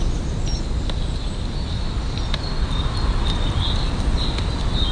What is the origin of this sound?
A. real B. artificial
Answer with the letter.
A